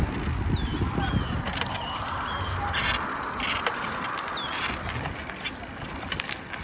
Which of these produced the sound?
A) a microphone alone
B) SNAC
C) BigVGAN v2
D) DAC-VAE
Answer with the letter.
A